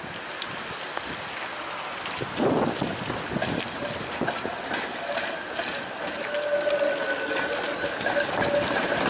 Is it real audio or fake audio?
real